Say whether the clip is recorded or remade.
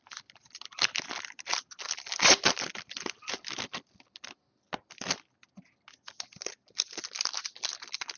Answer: recorded